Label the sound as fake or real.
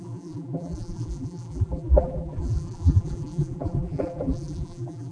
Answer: fake